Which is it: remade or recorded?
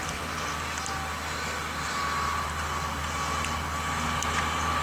recorded